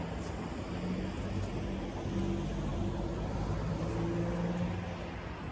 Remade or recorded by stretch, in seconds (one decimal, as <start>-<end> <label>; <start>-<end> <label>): 0.0-2.7 recorded; 2.7-3.9 remade; 3.9-5.5 recorded